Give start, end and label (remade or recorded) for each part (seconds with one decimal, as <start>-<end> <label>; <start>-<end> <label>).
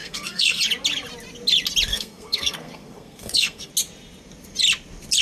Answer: 0.0-0.6 remade; 0.6-1.9 recorded; 1.9-3.7 remade; 3.7-5.2 recorded